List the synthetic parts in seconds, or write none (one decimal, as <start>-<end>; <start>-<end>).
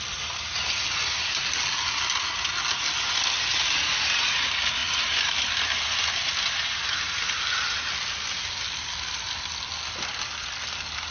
4.8-5.5